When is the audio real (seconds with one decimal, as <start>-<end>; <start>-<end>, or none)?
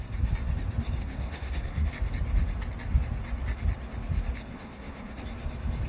0.0-1.0; 1.9-4.5; 5.2-5.9